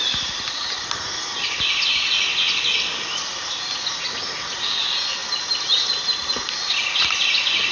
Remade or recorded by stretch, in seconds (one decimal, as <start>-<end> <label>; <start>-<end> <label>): 0.0-7.7 recorded

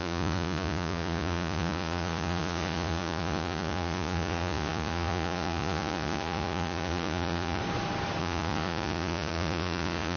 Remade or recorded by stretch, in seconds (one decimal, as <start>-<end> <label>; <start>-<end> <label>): 0.0-7.6 remade; 7.6-8.2 recorded; 8.2-10.2 remade

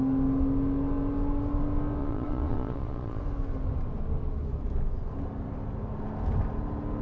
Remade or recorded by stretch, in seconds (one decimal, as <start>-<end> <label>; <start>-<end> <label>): 0.0-2.0 recorded; 2.0-3.2 remade; 3.2-7.0 recorded

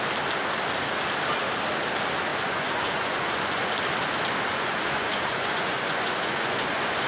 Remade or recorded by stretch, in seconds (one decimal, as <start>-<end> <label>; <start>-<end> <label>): 0.0-2.3 recorded; 2.3-3.7 remade; 3.7-4.5 recorded; 4.5-7.1 remade

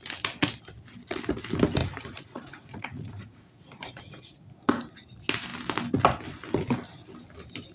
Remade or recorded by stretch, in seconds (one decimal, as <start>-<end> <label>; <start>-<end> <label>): 0.0-1.8 recorded; 1.8-4.5 remade; 4.5-7.7 recorded

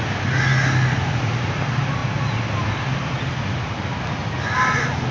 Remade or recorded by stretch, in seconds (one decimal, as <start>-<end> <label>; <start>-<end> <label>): 0.0-5.1 recorded

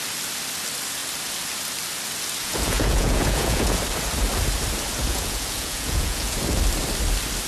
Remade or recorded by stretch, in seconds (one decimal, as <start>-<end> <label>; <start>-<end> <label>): 0.0-2.4 recorded; 2.4-3.8 remade; 3.8-5.0 recorded; 5.0-6.4 remade; 6.4-7.5 recorded